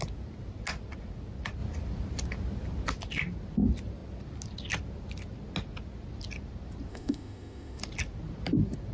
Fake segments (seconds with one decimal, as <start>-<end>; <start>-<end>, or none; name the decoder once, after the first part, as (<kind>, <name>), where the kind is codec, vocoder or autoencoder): 6.9-7.8 (autoencoder, DAC-VAE)